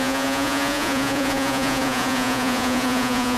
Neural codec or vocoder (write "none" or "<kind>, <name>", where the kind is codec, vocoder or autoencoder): vocoder, Vocos